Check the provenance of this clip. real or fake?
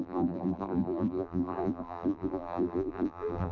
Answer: fake